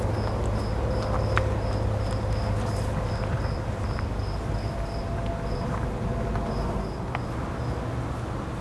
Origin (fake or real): real